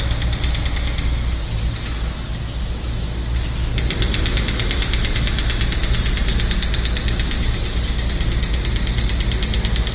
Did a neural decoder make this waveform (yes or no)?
no